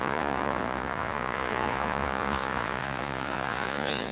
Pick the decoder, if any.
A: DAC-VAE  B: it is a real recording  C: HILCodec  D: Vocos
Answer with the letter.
D